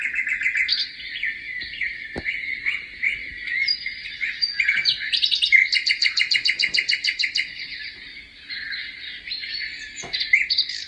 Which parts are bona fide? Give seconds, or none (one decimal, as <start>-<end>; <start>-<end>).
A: 0.0-10.9